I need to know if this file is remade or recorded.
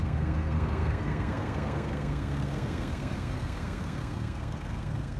remade